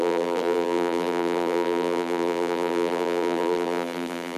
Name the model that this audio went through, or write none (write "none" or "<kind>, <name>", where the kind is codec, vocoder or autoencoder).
vocoder, BigVGAN v2